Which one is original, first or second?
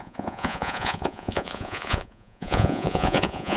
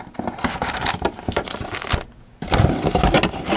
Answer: second